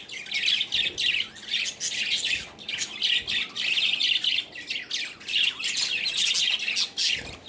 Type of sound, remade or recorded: recorded